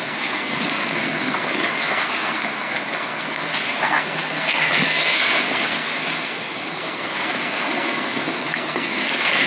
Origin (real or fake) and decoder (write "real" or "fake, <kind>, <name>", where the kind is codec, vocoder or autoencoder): fake, codec, SNAC